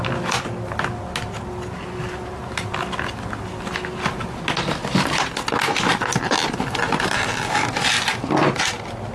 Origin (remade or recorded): recorded